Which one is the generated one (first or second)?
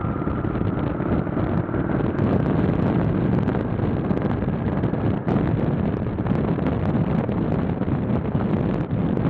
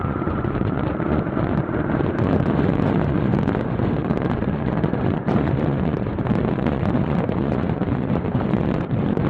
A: second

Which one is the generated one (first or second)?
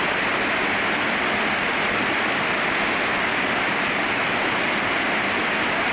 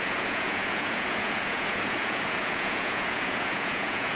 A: second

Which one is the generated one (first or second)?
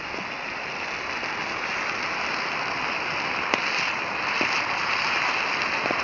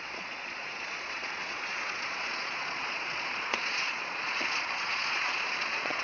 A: second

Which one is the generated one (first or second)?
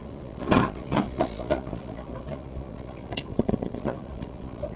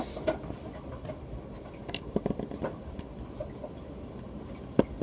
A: first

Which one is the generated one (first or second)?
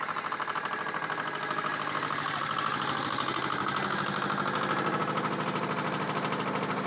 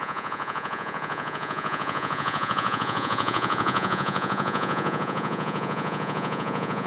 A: second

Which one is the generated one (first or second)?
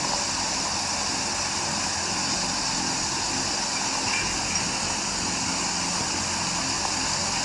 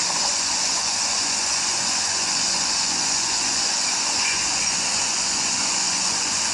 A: second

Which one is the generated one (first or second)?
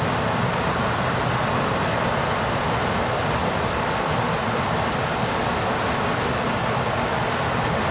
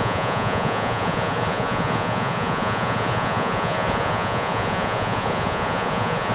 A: second